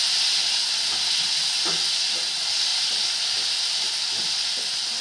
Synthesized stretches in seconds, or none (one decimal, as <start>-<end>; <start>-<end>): none

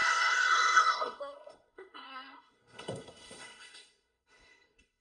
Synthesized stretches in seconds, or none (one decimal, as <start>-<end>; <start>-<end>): 0.0-5.0